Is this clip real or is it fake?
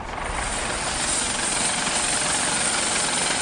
real